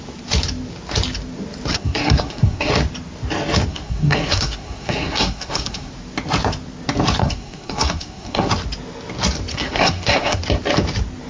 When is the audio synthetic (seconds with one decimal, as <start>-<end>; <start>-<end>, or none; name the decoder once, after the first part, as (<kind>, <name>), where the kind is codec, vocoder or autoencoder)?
1.7-2.7 (codec, SNAC); 3.7-5.9; 7.2-8.5; 9.5-10.4